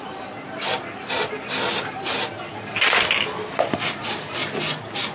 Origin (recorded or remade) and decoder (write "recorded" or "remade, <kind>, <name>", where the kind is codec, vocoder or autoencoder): recorded